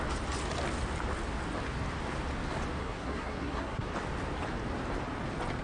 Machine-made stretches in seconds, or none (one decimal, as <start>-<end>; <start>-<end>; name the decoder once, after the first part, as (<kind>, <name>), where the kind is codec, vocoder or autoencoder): 2.8-3.9 (codec, SNAC)